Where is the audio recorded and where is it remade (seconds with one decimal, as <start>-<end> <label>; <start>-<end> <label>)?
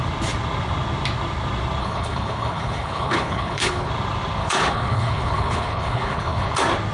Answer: 0.0-1.8 recorded; 1.8-3.9 remade; 3.9-4.4 recorded; 4.4-6.5 remade; 6.5-6.9 recorded